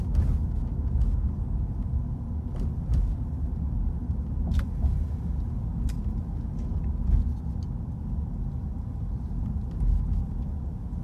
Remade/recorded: recorded